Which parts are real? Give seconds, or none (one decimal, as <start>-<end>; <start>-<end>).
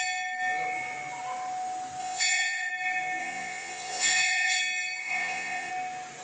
0.0-2.0; 2.7-3.2; 4.6-5.0; 5.7-6.2